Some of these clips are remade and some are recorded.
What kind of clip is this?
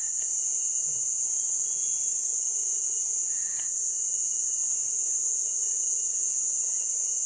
remade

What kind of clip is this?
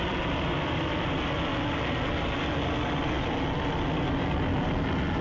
recorded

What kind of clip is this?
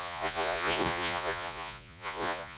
remade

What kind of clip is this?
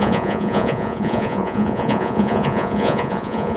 remade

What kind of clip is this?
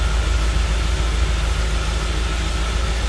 recorded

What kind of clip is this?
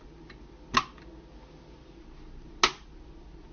recorded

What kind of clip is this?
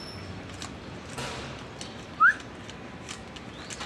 recorded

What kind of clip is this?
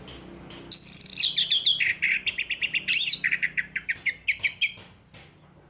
recorded